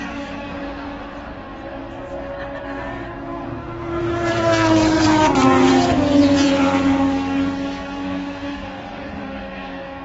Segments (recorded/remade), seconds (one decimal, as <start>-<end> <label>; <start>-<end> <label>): 0.0-0.6 remade; 0.6-1.7 recorded; 1.7-5.7 remade; 5.7-6.6 recorded; 6.6-10.0 remade